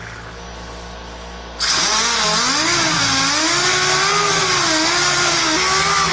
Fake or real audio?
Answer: real